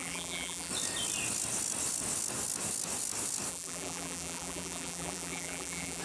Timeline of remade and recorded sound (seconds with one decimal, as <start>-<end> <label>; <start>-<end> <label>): 0.0-0.7 remade; 0.7-3.5 recorded; 3.5-6.0 remade